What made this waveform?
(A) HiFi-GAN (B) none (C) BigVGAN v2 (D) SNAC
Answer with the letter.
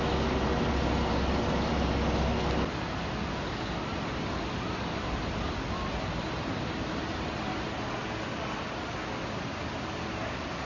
B